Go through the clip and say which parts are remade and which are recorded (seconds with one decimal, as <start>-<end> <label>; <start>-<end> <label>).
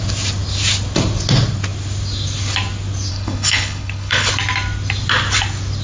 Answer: 0.0-3.1 recorded; 3.1-4.3 remade; 4.3-5.8 recorded